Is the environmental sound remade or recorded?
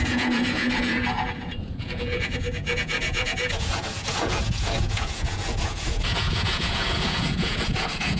remade